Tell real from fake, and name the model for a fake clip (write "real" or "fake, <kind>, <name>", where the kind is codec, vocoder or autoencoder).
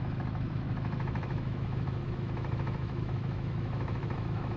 fake, autoencoder, DAC-VAE